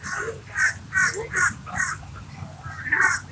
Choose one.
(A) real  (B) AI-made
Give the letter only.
A